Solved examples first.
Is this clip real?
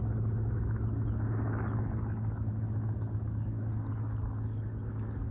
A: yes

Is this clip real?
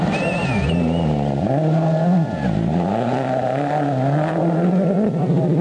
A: yes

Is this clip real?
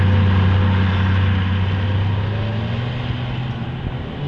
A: yes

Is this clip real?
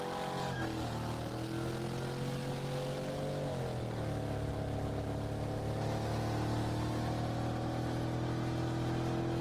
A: yes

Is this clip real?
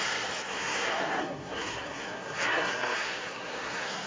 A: no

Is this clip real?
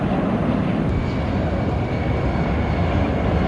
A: yes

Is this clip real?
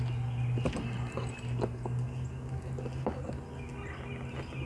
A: yes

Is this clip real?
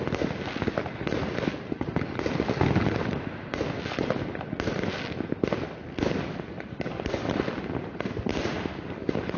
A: yes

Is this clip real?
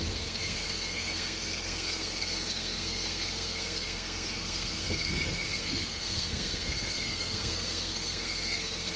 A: no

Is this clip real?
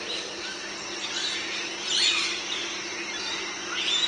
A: yes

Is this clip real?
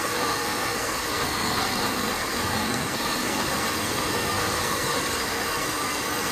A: no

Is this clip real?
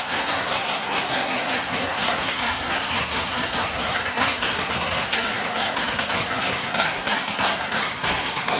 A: no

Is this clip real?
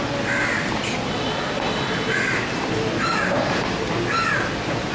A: yes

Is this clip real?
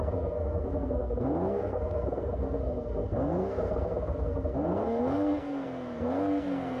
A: no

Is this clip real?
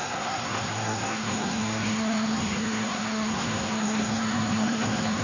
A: no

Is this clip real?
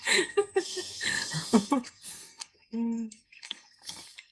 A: no